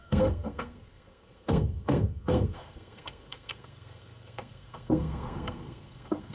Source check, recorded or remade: remade